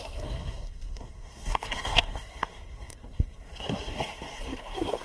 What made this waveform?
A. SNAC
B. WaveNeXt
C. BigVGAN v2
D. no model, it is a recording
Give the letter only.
A